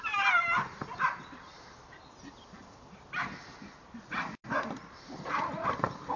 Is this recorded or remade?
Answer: recorded